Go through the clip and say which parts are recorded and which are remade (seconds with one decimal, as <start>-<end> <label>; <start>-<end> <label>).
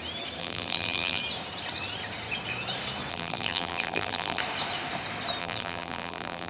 0.0-0.4 recorded; 0.4-1.2 remade; 1.2-3.1 recorded; 3.1-4.4 remade; 4.4-5.4 recorded; 5.4-6.5 remade